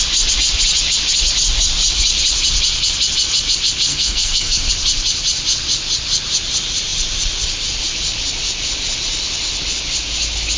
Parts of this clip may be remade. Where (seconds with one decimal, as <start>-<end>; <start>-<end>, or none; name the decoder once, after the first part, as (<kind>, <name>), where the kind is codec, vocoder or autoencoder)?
3.9-4.7 (codec, SNAC)